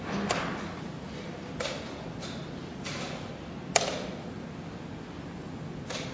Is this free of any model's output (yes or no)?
yes